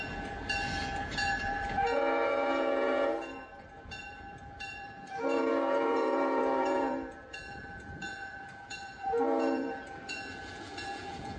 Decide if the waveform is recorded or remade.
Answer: remade